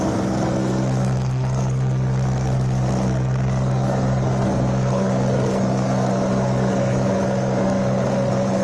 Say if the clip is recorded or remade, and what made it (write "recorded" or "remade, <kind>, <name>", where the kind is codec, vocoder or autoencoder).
remade, codec, SNAC